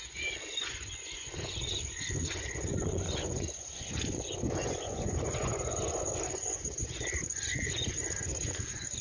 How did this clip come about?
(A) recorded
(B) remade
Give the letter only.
B